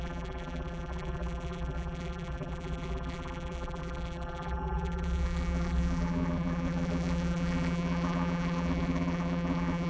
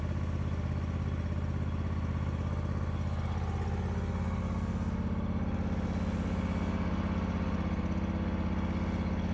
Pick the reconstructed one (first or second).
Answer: first